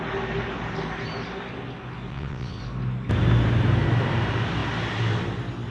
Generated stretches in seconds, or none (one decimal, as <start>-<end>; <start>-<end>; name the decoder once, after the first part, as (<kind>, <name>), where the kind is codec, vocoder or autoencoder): 2.1-2.6 (vocoder, WaveNeXt)